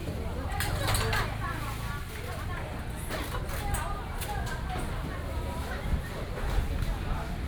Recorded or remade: recorded